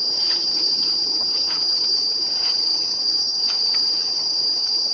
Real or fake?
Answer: fake